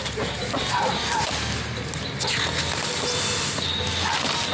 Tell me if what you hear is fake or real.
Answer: real